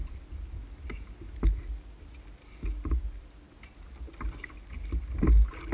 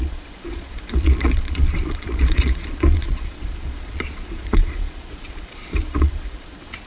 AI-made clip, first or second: second